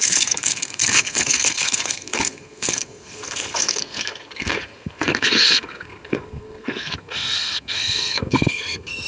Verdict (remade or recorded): remade